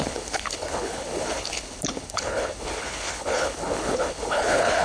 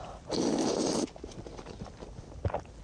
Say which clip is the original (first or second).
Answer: second